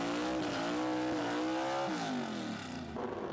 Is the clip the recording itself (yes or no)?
yes